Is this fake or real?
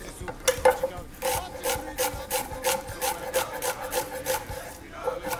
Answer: real